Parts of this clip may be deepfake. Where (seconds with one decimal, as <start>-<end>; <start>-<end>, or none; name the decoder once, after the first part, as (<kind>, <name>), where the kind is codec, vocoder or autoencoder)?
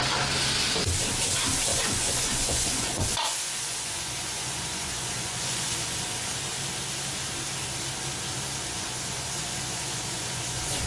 1.7-6.3 (vocoder, Vocos); 8.6-10.9